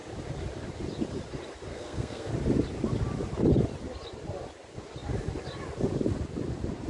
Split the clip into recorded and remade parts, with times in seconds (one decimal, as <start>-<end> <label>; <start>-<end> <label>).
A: 0.0-1.7 recorded; 1.7-2.3 remade; 2.3-6.9 recorded